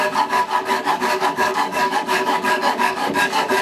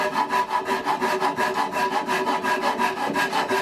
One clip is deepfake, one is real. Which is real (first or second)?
second